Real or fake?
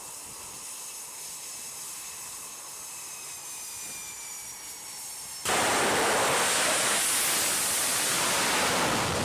real